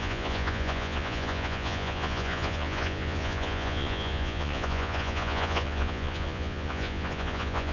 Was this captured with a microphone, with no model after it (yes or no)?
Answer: no